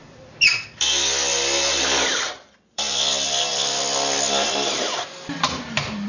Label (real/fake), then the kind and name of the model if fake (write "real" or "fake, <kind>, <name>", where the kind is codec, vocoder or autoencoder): fake, vocoder, BigVGAN v2